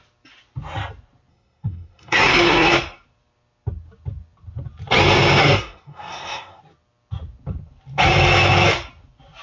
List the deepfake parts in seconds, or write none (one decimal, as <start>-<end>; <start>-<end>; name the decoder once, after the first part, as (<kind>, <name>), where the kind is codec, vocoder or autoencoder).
1.3-2.7 (codec, SNAC); 5.4-6.6